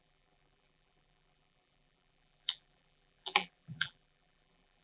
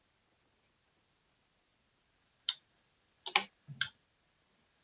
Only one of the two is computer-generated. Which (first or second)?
first